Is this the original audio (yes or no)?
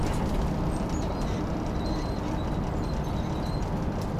yes